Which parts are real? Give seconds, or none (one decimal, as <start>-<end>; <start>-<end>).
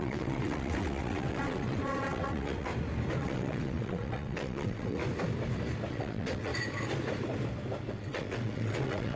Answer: 2.7-3.2; 5.0-5.9; 6.5-7.9